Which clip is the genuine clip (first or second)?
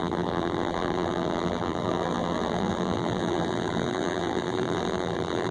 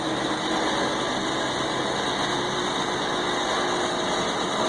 second